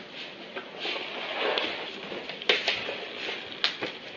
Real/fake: real